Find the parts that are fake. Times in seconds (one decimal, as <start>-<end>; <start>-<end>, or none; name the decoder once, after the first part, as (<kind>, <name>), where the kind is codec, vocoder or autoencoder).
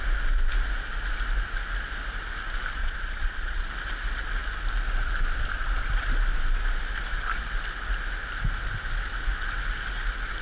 2.8-3.7 (vocoder, Vocos)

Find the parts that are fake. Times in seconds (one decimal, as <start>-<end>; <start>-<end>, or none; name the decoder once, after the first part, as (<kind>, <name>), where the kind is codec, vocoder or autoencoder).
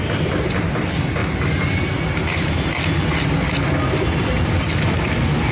none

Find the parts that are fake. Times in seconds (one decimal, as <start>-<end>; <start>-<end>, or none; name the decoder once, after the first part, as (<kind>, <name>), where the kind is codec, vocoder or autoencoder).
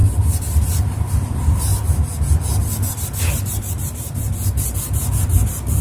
none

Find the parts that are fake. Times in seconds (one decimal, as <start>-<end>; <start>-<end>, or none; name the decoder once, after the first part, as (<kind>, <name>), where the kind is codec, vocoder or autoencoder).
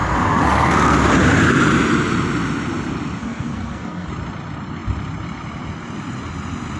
0.0-1.1 (codec, SNAC); 3.2-4.1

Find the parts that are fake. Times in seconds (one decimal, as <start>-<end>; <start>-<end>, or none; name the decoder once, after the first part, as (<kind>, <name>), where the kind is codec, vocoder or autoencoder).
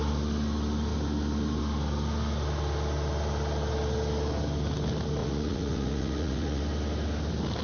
5.2-6.6 (vocoder, Vocos)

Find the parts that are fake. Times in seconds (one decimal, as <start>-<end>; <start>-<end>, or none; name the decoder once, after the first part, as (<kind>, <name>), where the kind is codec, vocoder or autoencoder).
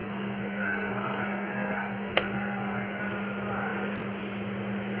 0.0-3.0 (codec, SNAC)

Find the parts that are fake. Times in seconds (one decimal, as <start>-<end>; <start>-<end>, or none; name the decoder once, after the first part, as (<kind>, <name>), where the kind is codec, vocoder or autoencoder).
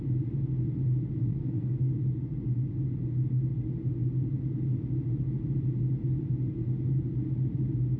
1.3-1.9 (codec, SNAC)